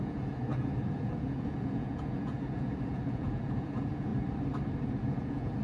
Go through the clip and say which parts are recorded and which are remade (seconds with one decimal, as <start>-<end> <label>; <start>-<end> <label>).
0.0-4.1 remade; 4.1-4.9 recorded; 4.9-5.6 remade